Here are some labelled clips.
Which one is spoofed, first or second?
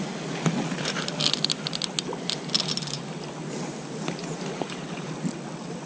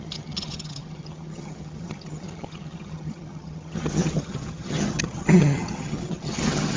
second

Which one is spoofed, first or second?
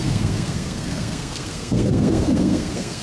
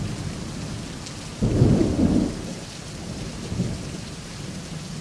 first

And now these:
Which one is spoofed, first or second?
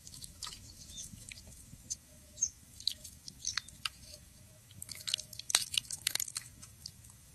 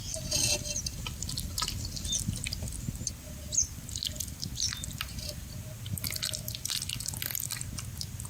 first